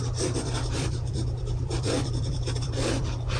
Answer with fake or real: fake